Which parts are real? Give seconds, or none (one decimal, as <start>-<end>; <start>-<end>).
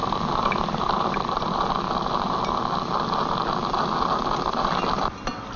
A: 0.0-5.6